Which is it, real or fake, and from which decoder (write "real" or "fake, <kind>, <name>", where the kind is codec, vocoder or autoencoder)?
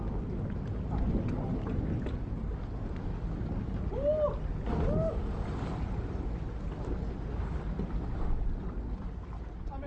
real